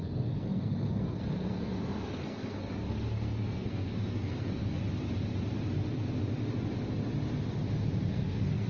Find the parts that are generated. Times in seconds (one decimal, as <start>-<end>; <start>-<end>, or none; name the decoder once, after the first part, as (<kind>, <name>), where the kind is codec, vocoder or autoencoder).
0.0-4.8 (codec, SNAC); 8.1-8.7